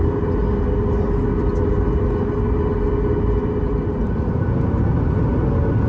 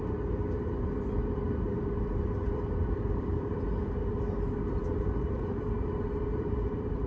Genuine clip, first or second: first